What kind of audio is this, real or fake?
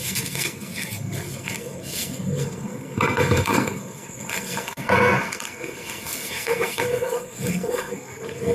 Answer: fake